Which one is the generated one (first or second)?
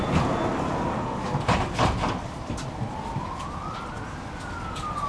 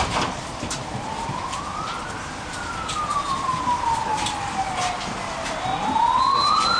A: second